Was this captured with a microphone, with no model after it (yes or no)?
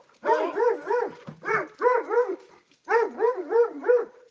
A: no